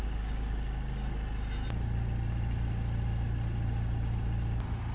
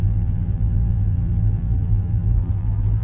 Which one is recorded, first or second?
first